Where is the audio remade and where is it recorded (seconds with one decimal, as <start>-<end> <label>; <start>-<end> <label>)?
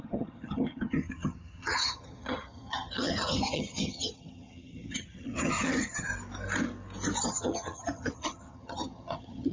0.0-6.1 remade; 6.1-7.2 recorded; 7.2-9.5 remade